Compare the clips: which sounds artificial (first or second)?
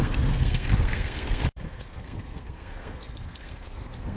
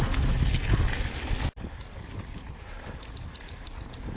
first